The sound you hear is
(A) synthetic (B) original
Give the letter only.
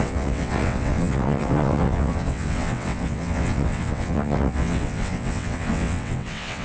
A